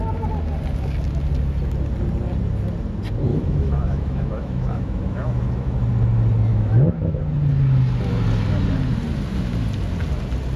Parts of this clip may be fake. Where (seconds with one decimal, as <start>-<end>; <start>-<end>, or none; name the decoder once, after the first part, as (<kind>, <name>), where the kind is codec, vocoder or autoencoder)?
3.3-5.8 (autoencoder, DAC-VAE); 6.5-7.2